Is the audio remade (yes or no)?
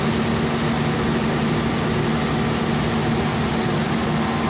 no